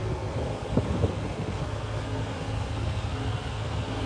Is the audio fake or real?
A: fake